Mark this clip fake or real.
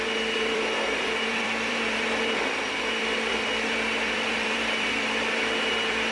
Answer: fake